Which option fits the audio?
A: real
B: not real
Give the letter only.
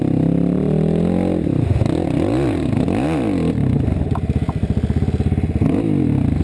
A